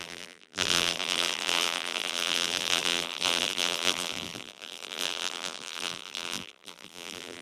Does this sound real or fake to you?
fake